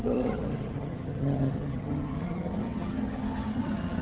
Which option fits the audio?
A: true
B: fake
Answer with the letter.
B